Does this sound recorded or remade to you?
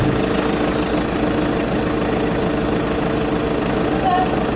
recorded